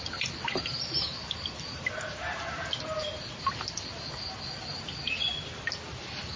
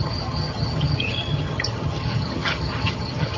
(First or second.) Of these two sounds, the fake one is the second